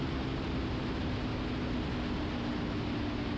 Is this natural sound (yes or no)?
yes